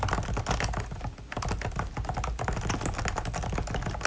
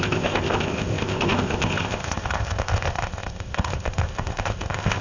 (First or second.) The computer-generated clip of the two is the second